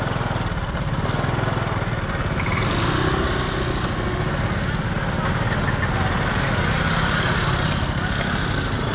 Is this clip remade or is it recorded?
recorded